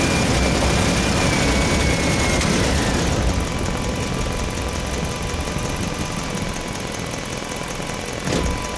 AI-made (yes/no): no